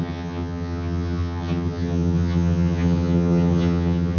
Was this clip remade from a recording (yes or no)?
yes